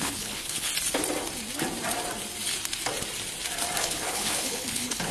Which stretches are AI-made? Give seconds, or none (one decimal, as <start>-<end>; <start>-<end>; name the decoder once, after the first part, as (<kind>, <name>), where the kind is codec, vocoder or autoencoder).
0.0-0.7 (codec, HILCodec); 3.8-5.1